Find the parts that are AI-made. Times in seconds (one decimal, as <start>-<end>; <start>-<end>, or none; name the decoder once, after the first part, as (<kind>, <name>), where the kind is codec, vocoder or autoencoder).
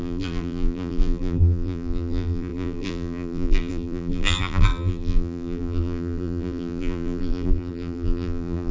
0.0-8.7 (vocoder, BigVGAN v2)